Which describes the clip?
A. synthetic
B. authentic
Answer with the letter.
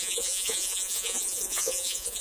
A